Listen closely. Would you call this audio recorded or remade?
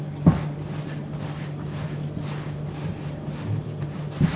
recorded